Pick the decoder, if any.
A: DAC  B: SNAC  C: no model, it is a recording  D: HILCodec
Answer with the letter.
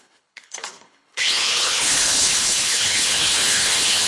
D